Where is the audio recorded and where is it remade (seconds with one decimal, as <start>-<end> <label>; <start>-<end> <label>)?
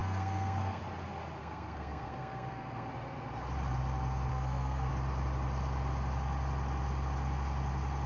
0.0-0.8 remade; 0.8-1.4 recorded; 1.4-2.9 remade; 2.9-4.3 recorded; 4.3-4.9 remade; 4.9-8.1 recorded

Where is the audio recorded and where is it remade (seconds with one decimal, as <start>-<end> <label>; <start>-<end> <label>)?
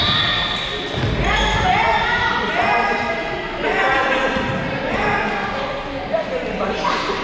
0.0-7.2 recorded